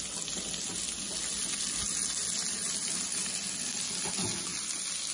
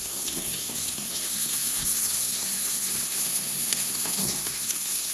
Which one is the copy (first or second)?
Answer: second